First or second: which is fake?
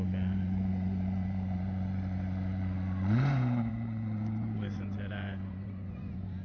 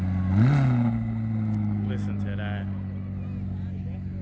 first